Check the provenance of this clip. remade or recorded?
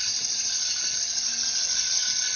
recorded